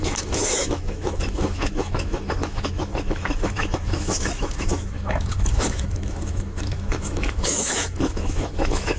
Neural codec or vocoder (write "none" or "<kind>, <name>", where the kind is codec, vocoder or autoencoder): autoencoder, DAC-VAE